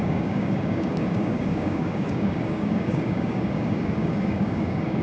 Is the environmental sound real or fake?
fake